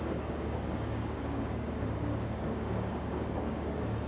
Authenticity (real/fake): fake